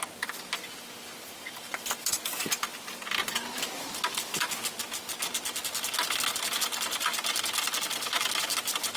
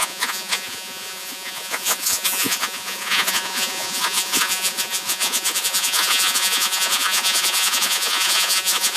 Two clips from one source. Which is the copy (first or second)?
second